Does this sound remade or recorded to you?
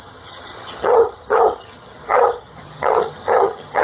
remade